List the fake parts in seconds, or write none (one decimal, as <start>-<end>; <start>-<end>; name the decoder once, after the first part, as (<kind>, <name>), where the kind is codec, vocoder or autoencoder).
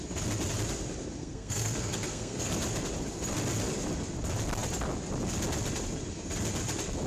1.2-2.5 (codec, SNAC)